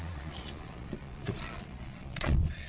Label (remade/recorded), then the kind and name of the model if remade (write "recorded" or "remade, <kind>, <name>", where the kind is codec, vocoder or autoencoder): remade, vocoder, Vocos